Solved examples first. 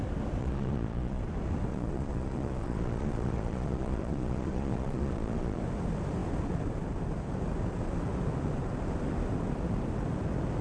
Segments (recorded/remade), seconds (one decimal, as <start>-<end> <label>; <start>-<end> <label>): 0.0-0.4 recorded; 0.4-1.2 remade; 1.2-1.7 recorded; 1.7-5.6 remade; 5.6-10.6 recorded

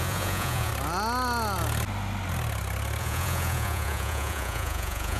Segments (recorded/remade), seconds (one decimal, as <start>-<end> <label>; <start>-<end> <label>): 0.0-0.7 remade; 0.7-3.0 recorded; 3.0-5.2 remade

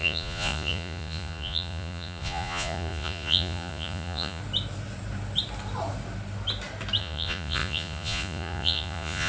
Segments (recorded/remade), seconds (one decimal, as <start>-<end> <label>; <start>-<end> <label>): 0.0-4.4 remade; 4.4-7.0 recorded; 7.0-9.3 remade

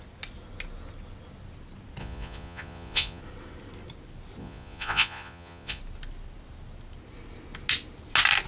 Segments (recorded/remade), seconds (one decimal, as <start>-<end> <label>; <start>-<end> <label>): 0.0-2.0 recorded; 2.0-3.2 remade; 3.2-4.4 recorded; 4.4-5.8 remade; 5.8-8.5 recorded

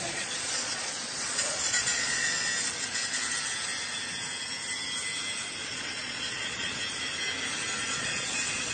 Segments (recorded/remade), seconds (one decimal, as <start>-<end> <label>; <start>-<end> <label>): 0.0-2.5 remade; 2.5-5.6 recorded; 5.6-6.8 remade; 6.8-7.9 recorded; 7.9-8.7 remade